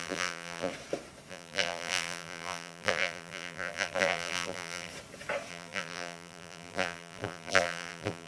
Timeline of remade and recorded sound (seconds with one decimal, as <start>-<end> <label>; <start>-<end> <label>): 0.0-0.7 remade; 0.7-1.3 recorded; 1.3-4.9 remade; 4.9-5.5 recorded; 5.5-8.3 remade